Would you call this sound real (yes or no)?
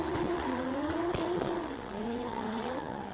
no